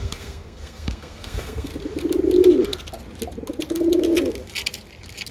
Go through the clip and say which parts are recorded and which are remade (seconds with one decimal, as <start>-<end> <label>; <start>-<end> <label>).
0.0-1.7 remade; 1.7-5.3 recorded